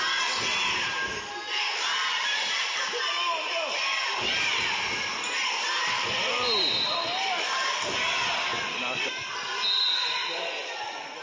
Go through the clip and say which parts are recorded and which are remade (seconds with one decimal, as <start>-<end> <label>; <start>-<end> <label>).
0.0-1.8 recorded; 1.8-3.0 remade; 3.0-3.9 recorded; 3.9-6.7 remade; 6.7-11.2 recorded